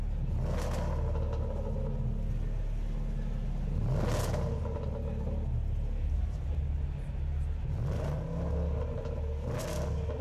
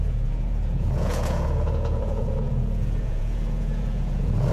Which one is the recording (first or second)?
first